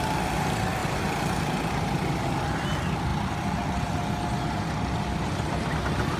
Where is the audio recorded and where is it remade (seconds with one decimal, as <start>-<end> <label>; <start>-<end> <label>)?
0.0-6.2 recorded